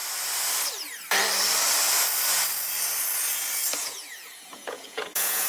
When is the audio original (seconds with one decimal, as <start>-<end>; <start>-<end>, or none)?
0.0-3.8